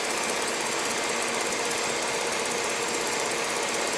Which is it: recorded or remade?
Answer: recorded